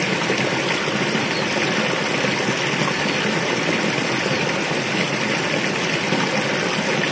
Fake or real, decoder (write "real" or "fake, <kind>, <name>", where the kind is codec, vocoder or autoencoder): real